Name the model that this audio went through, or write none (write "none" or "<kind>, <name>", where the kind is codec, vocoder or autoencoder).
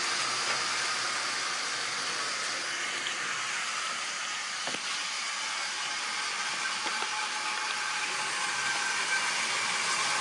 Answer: none